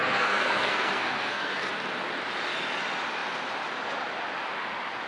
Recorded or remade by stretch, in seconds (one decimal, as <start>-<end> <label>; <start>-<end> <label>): 0.0-1.7 remade; 1.7-5.1 recorded